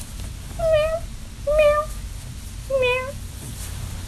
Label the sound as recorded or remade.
recorded